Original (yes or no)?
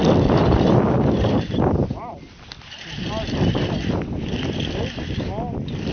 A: yes